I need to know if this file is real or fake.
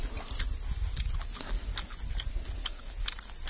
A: real